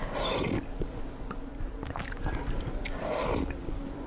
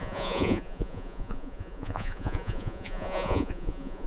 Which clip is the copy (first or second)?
second